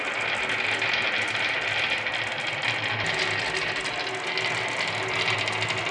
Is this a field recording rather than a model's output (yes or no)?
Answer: yes